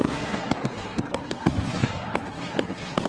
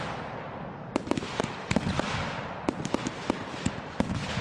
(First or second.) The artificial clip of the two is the first